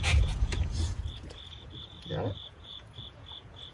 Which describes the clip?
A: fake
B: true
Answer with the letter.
A